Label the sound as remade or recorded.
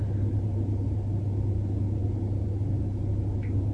recorded